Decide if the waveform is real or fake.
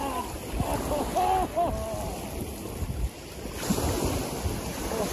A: real